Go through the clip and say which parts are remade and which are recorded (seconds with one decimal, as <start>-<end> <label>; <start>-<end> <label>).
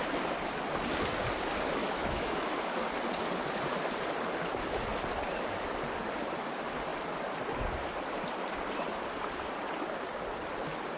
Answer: 0.0-1.8 recorded; 1.8-2.6 remade; 2.6-11.0 recorded